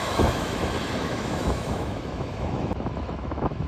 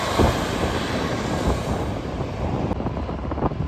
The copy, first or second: first